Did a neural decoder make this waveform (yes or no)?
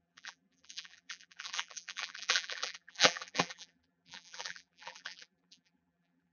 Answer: yes